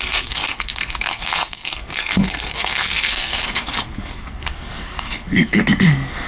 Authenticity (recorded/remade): remade